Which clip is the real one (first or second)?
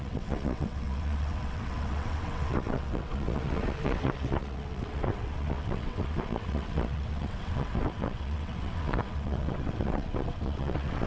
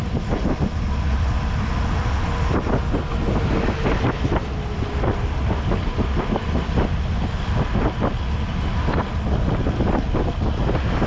second